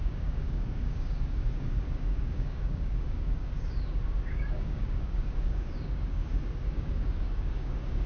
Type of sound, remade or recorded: remade